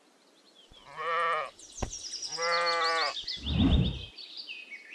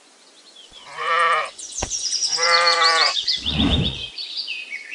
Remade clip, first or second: second